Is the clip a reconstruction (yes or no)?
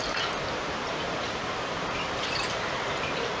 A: yes